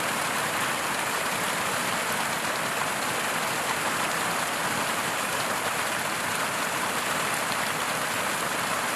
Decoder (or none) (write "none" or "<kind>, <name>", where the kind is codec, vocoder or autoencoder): none